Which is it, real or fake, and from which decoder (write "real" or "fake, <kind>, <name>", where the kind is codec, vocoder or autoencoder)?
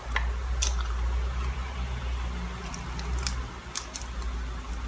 real